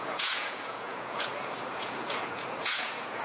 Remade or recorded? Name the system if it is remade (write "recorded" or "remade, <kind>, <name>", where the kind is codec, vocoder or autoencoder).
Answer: remade, vocoder, Vocos